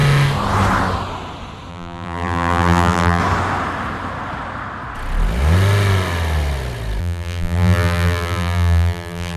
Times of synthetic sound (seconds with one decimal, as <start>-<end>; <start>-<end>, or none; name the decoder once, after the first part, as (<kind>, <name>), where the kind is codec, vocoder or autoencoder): 1.7-3.2 (vocoder, BigVGAN v2); 7.0-9.4